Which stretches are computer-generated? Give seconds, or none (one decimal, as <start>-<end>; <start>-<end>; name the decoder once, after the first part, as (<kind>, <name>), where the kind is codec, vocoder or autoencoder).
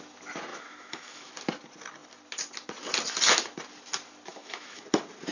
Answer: 0.5-1.3 (autoencoder, DAC-VAE); 4.3-4.8